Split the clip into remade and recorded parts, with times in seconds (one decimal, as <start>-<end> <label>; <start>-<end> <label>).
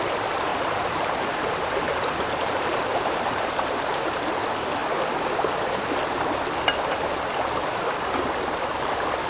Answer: 0.0-0.5 recorded; 0.5-2.5 remade; 2.5-2.9 recorded; 2.9-4.2 remade; 4.2-9.3 recorded